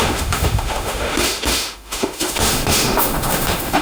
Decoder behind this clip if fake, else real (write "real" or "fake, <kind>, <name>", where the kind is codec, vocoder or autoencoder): fake, autoencoder, DAC-VAE